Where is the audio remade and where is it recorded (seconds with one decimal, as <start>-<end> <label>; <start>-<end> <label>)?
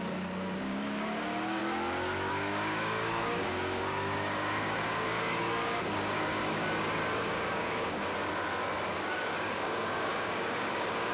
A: 0.0-1.6 remade; 1.6-2.3 recorded; 2.3-8.1 remade; 8.1-8.9 recorded; 8.9-11.1 remade